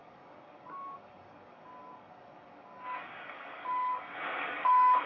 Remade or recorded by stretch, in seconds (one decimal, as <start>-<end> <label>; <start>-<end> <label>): 0.0-5.1 remade